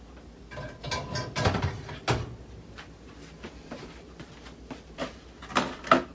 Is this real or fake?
real